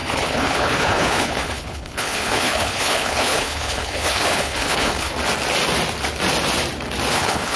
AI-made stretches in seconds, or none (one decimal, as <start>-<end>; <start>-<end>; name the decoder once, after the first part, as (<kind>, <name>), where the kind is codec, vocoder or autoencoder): 0.0-5.1 (codec, HILCodec); 7.1-7.6